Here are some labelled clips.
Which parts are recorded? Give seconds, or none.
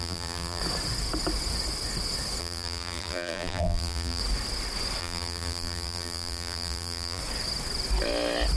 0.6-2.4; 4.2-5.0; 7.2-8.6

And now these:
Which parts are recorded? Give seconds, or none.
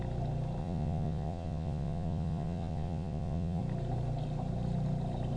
0.0-0.6; 3.6-5.4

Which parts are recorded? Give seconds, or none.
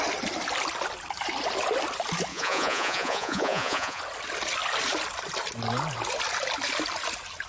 0.0-2.3; 4.0-7.5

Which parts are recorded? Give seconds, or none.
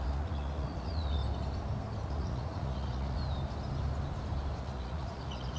1.2-2.1; 3.2-4.6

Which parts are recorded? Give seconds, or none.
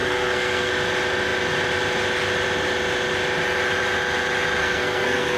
0.7-4.6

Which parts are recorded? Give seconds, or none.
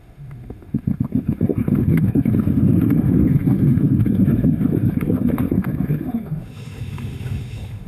none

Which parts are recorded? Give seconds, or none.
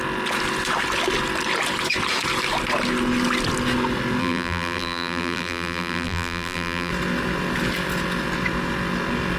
0.0-4.2; 6.9-9.4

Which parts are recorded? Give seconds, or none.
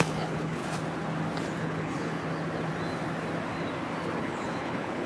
0.6-1.6; 2.2-4.2